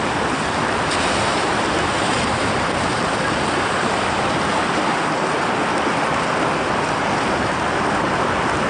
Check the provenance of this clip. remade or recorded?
recorded